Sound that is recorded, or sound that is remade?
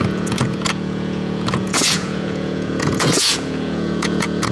remade